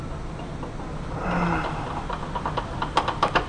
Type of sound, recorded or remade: recorded